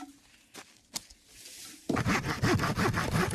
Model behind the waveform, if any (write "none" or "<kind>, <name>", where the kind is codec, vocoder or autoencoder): none